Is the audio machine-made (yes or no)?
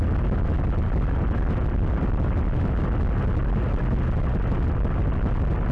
no